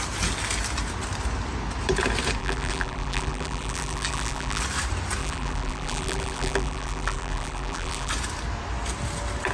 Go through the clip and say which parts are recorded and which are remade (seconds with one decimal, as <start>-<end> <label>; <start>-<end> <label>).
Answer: 0.0-2.4 recorded; 2.4-4.6 remade; 4.6-5.2 recorded; 5.2-8.1 remade; 8.1-9.5 recorded